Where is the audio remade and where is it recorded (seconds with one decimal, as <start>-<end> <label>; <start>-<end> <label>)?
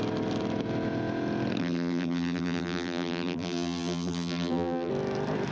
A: 0.0-1.6 recorded; 1.6-4.9 remade; 4.9-5.5 recorded